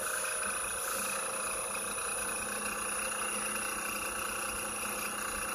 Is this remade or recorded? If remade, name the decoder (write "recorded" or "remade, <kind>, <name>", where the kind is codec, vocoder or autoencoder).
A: recorded